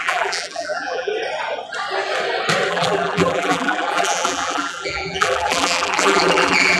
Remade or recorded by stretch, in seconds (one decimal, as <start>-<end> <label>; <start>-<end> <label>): 0.0-1.1 remade; 1.1-2.7 recorded; 2.7-6.8 remade